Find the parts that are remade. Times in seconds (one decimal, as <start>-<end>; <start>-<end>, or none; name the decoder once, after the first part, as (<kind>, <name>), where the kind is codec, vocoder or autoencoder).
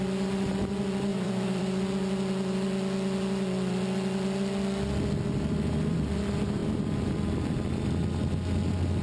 1.1-1.8 (vocoder, BigVGAN v2); 6.6-7.1